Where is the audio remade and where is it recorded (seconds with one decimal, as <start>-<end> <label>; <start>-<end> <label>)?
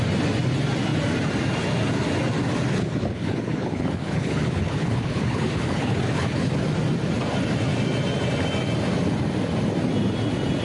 0.0-2.7 recorded; 2.7-6.5 remade; 6.5-10.6 recorded